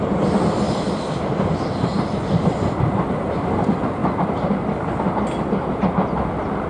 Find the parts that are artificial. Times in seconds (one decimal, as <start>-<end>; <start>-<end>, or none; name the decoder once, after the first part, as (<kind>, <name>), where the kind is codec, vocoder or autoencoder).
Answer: none